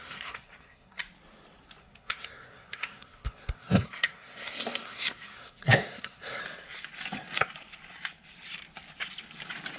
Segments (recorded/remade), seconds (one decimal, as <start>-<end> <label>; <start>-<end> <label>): 0.0-1.0 remade; 1.0-1.8 recorded; 1.8-6.4 remade; 6.4-9.8 recorded